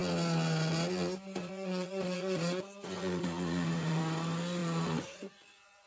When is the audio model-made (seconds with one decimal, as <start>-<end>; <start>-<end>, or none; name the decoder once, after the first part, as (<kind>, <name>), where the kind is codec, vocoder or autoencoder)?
1.4-4.0 (vocoder, Vocos); 4.6-5.9